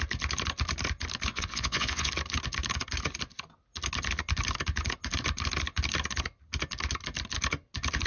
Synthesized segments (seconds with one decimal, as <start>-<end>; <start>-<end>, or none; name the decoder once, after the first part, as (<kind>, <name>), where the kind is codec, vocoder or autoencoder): 1.3-2.1 (vocoder, Vocos)